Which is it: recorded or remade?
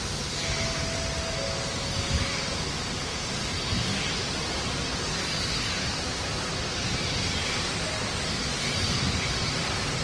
recorded